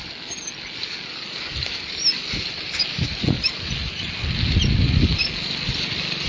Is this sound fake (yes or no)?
no